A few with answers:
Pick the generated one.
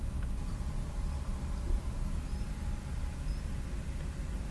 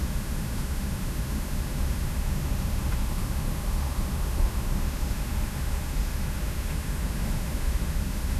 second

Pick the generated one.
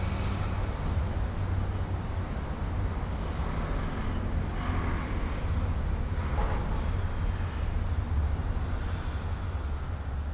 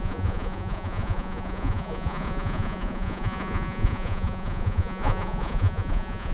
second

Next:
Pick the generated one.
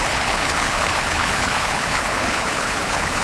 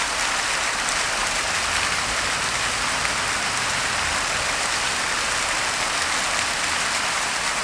first